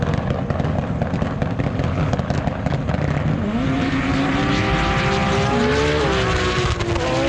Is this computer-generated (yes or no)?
no